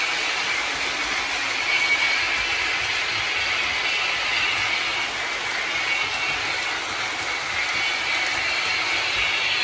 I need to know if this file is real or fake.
real